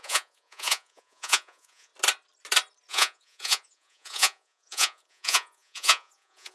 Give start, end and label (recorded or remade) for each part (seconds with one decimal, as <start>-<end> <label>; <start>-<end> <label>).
0.0-1.9 remade; 1.9-2.9 recorded; 2.9-6.5 remade